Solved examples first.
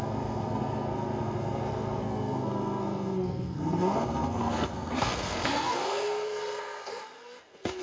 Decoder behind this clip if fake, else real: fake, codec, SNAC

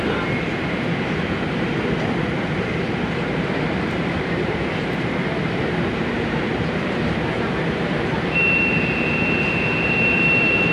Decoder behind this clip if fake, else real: fake, vocoder, BigVGAN v2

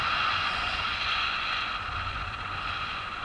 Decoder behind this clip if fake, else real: fake, vocoder, Vocos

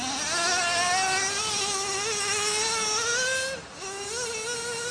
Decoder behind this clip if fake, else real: real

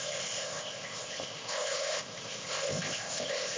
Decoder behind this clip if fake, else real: fake, codec, ZipCodec